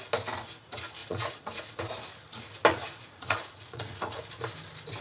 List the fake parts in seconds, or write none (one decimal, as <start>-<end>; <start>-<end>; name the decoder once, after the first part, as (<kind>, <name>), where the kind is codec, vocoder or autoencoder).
1.0-1.8 (vocoder, Vocos); 2.7-4.2